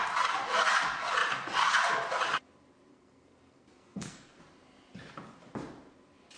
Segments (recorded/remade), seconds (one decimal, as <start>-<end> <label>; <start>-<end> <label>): 0.0-2.9 recorded; 2.9-4.4 remade; 4.4-6.4 recorded